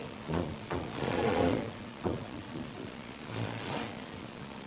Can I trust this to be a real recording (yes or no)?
no